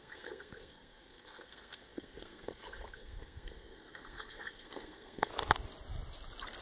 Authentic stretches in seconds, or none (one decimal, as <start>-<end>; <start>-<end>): 5.3-6.6